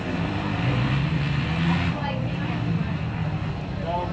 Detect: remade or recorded recorded